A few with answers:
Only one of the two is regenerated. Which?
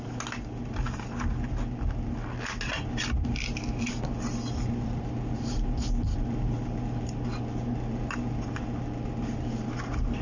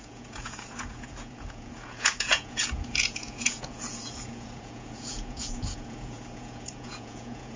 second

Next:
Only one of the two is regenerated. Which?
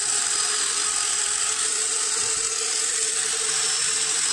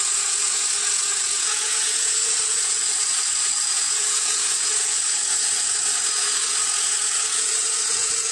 second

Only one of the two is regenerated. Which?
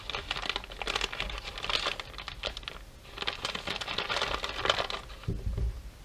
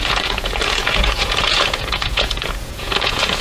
second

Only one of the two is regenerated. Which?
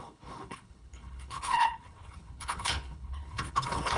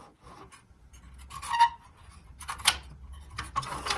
first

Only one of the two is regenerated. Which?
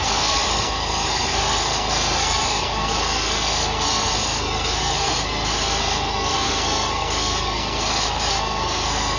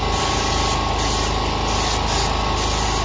first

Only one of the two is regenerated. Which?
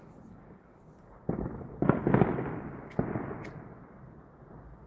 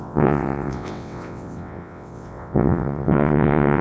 second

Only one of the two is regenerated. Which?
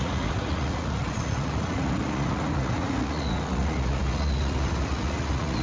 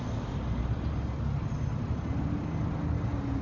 first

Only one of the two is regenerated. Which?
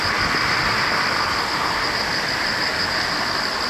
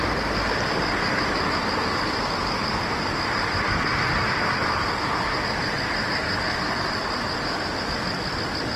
first